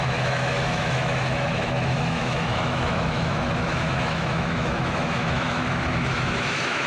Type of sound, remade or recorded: remade